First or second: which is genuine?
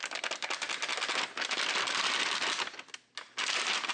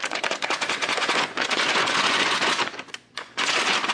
first